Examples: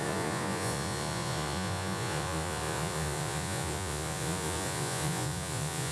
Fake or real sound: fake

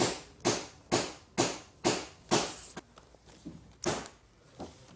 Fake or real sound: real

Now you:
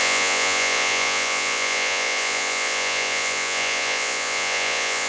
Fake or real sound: fake